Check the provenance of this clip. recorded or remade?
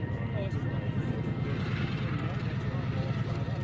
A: recorded